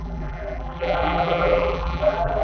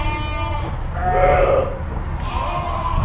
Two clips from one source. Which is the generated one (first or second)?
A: first